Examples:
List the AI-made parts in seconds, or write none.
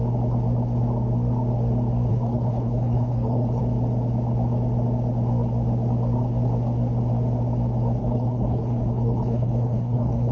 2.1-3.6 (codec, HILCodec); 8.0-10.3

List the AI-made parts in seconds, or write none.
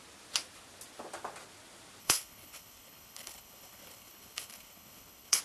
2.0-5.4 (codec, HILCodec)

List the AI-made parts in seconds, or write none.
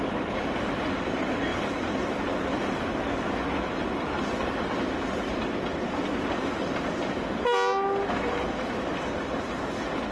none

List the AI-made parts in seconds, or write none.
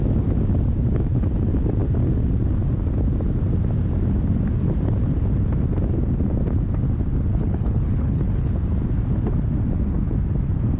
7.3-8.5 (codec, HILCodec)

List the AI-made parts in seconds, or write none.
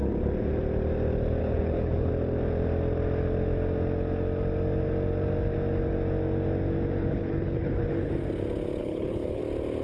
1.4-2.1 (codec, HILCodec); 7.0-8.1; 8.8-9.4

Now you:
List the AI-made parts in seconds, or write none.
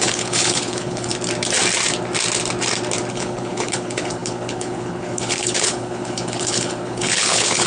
0.0-1.1 (codec, HILCodec); 3.1-7.7